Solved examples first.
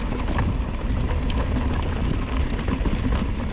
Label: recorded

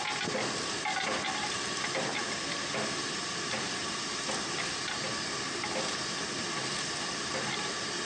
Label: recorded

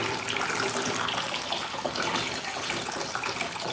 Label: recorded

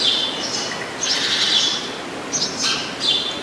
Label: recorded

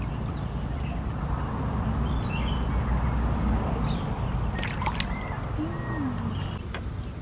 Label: recorded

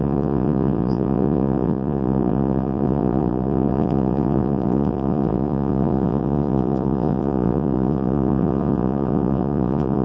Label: remade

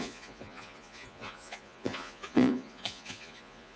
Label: remade